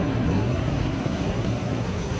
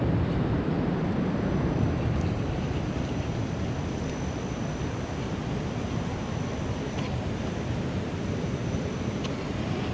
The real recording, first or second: second